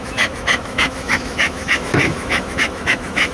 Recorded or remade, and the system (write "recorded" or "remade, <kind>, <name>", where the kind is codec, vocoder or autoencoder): remade, autoencoder, DAC-VAE